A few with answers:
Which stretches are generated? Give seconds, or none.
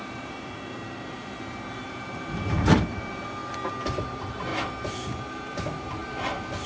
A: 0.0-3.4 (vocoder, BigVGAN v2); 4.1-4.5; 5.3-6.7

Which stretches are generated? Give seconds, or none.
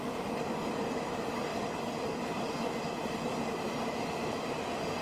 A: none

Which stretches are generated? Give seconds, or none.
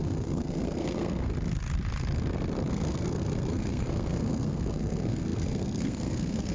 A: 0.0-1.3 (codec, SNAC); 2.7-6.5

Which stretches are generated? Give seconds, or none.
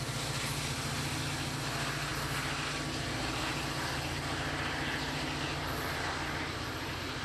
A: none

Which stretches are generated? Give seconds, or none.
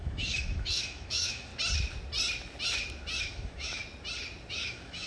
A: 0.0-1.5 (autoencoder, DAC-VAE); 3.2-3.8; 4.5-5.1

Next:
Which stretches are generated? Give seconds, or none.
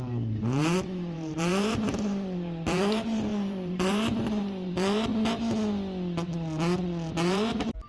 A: 0.0-5.1 (vocoder, BigVGAN v2); 7.1-7.9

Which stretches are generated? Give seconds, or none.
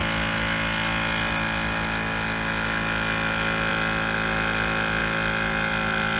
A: none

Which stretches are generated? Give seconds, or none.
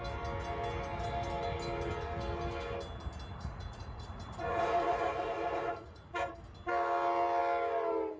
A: 3.3-6.3 (vocoder, Vocos)